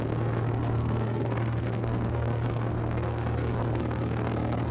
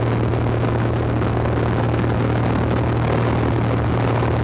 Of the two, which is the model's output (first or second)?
first